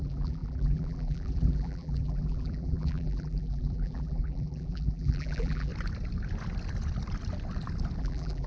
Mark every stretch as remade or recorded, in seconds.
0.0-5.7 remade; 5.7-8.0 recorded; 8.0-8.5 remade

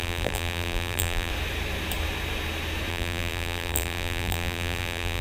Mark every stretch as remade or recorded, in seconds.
0.0-1.3 remade; 1.3-2.9 recorded; 2.9-5.2 remade

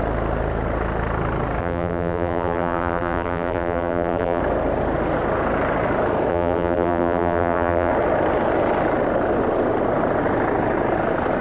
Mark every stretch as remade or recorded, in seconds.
0.0-1.6 recorded; 1.6-4.4 remade; 4.4-6.3 recorded; 6.3-7.9 remade; 7.9-11.4 recorded

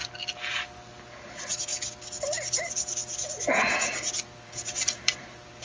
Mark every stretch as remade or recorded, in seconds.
0.0-1.2 recorded; 1.2-1.7 remade; 1.7-4.4 recorded; 4.4-5.6 remade

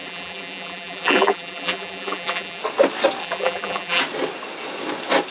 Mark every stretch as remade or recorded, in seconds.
0.0-2.6 remade; 2.6-3.2 recorded; 3.2-4.0 remade; 4.0-5.3 recorded

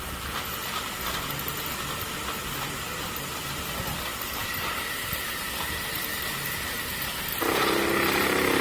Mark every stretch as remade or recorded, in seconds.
0.0-4.1 recorded; 4.1-7.3 remade; 7.3-8.6 recorded

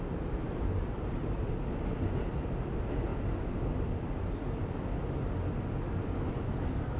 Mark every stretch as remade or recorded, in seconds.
0.0-0.4 recorded; 0.4-1.5 remade; 1.5-7.0 recorded

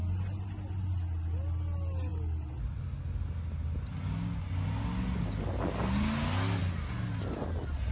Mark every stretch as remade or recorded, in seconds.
0.0-7.9 recorded